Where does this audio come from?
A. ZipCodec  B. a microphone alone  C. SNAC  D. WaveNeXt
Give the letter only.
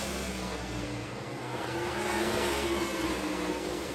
C